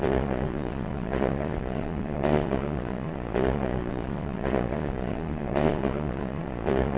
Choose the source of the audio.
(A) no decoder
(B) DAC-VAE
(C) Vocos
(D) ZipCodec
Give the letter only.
C